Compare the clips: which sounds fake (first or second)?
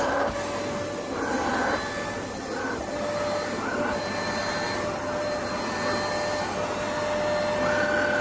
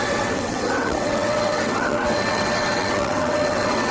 second